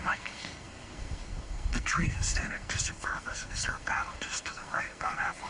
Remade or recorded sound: remade